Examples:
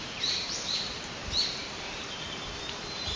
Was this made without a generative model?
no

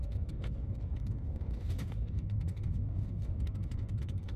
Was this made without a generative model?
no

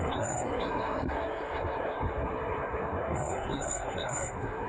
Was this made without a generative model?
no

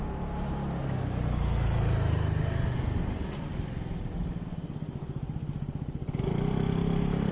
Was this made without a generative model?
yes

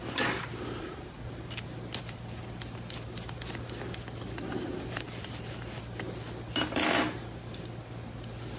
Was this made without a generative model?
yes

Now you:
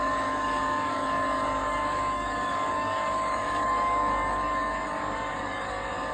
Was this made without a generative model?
no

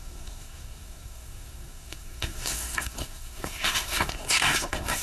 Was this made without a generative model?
no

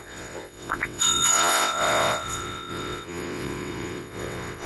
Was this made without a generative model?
no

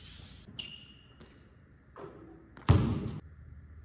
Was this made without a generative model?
yes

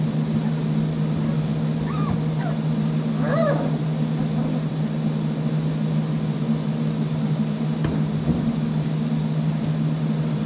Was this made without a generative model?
yes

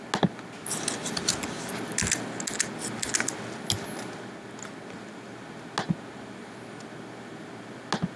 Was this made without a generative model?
yes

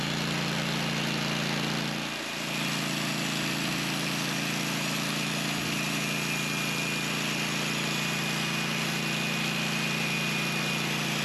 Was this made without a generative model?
yes